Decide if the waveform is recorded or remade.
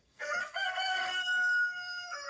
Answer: remade